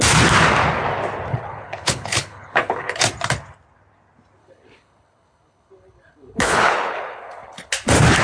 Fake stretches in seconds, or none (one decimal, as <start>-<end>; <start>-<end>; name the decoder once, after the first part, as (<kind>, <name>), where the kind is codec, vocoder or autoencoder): 1.3-3.0 (codec, HILCodec); 4.4-7.7